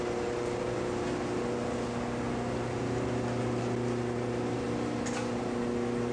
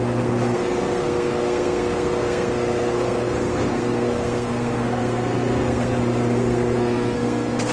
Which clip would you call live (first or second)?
first